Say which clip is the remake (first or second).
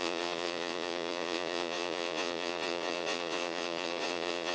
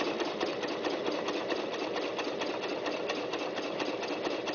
first